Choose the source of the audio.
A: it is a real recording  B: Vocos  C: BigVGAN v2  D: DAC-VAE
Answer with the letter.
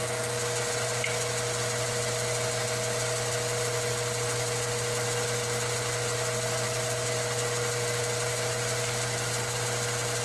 A